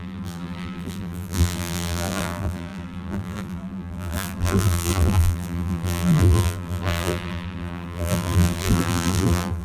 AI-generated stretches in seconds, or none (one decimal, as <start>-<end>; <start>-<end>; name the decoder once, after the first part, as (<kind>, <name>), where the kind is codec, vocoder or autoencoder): 0.0-9.6 (vocoder, BigVGAN v2)